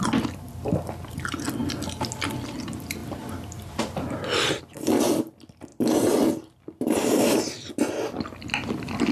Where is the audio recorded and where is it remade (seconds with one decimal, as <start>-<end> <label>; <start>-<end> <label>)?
0.0-3.0 recorded; 3.0-4.6 remade; 4.6-9.1 recorded